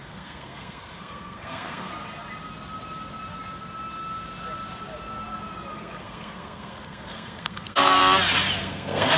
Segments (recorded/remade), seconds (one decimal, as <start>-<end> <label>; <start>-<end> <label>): 0.0-1.9 remade; 1.9-5.7 recorded; 5.7-8.0 remade; 8.0-8.6 recorded; 8.6-9.2 remade